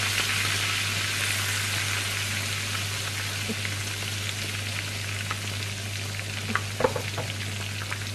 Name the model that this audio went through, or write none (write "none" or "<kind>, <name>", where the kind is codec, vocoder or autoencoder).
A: none